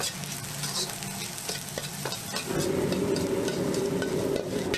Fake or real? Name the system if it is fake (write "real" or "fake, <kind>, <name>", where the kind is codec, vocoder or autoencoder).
real